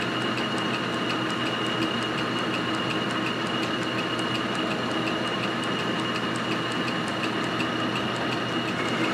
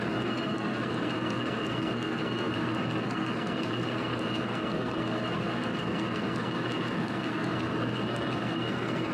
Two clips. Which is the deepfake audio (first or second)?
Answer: second